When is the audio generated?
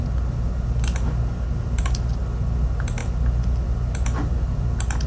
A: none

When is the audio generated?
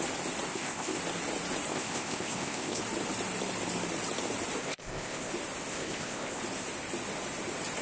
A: 0.5-1.0 (codec, ZipCodec); 1.7-2.8; 4.6-5.3; 5.7-6.4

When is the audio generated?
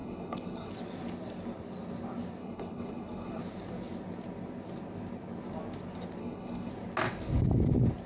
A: 0.0-0.7 (codec, HILCodec); 2.4-3.4; 6.2-6.7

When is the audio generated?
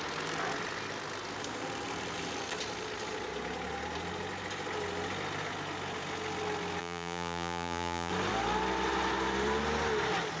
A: 6.8-8.1 (vocoder, Vocos)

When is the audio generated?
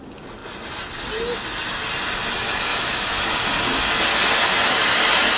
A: 2.7-3.2 (autoencoder, DAC-VAE)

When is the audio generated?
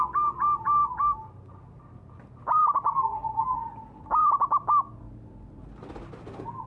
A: none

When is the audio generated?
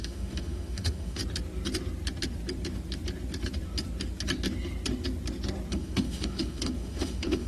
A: 0.0-1.2 (autoencoder, DAC-VAE); 5.7-7.5